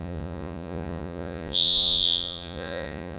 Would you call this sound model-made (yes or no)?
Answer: yes